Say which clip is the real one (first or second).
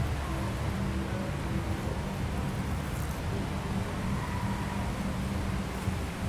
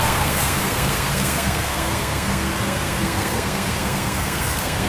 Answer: first